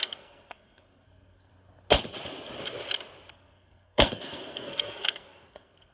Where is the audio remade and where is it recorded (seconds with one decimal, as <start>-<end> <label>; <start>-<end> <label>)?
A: 0.0-1.5 remade; 1.5-3.3 recorded; 3.3-5.9 remade